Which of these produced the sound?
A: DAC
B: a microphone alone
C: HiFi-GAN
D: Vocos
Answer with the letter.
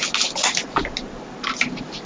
B